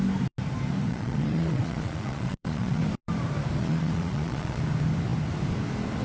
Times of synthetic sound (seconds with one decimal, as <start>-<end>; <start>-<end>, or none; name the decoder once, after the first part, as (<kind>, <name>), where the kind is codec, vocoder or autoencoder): 0.9-2.8 (vocoder, Vocos); 3.6-4.6